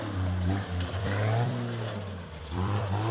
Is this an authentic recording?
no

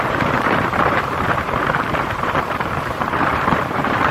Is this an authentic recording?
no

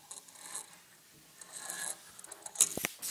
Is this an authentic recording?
yes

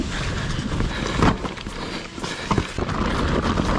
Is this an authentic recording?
yes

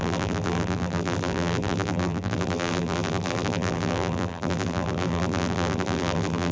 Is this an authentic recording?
no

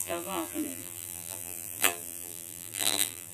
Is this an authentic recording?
no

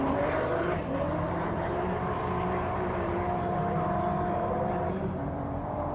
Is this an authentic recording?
no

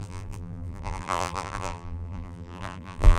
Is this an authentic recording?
no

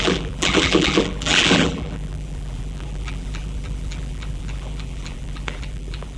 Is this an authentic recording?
no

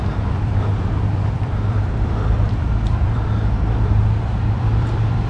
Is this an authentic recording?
no